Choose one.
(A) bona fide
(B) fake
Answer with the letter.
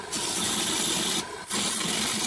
A